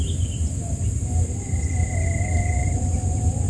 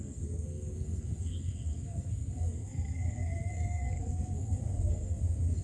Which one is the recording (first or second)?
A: first